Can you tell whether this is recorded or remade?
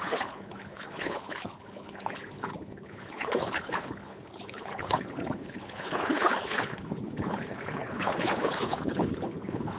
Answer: remade